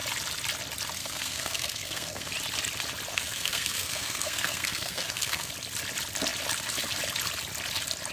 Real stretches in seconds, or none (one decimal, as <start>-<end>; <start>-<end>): 0.0-1.0; 2.3-3.1; 5.5-8.1